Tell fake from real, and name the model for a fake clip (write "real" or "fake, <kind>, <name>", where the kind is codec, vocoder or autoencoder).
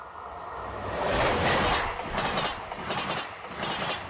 real